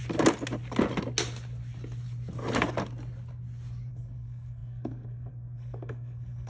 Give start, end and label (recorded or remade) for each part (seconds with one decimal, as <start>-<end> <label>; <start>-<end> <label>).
0.0-3.9 recorded; 3.9-6.5 remade